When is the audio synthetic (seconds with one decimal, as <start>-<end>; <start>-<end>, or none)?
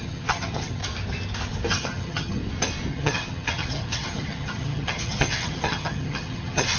0.0-0.8; 1.7-2.4; 2.9-6.8